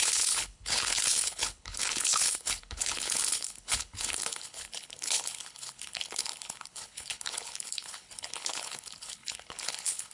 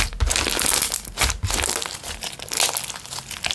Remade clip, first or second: first